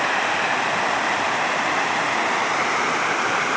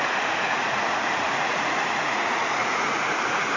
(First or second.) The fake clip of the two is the second